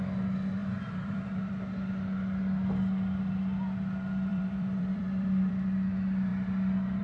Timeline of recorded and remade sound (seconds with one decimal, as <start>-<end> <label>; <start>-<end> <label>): 0.0-0.6 recorded; 0.6-1.5 remade; 1.5-4.3 recorded; 4.3-5.5 remade; 5.5-7.0 recorded

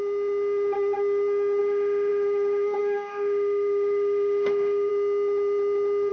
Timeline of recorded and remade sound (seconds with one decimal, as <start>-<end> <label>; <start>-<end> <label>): 0.0-1.6 recorded; 1.6-4.9 remade; 4.9-6.1 recorded

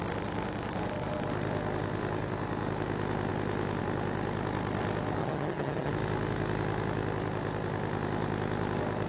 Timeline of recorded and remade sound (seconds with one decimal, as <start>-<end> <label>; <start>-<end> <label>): 0.0-5.2 recorded; 5.2-5.9 remade; 5.9-9.1 recorded